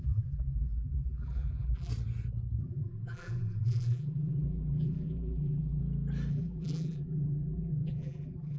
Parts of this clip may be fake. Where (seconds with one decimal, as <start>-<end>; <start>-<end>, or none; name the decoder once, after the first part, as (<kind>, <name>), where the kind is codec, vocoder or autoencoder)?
0.0-1.9 (vocoder, BigVGAN v2); 2.6-5.8; 6.3-8.6